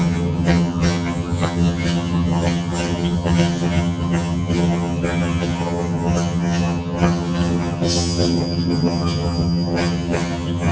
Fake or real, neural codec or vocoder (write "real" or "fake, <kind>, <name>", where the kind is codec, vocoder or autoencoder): fake, vocoder, HiFi-GAN